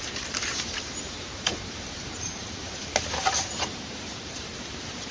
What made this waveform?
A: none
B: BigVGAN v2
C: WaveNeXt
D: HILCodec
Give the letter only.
B